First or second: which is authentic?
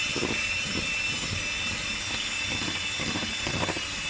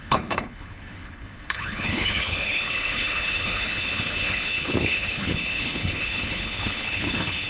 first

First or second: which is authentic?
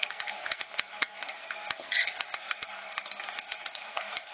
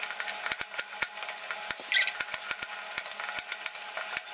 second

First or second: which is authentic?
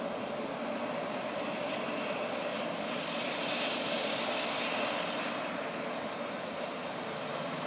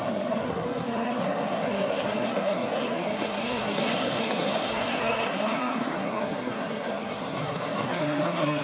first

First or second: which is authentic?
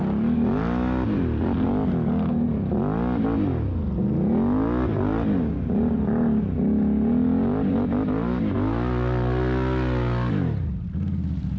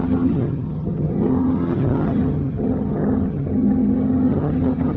first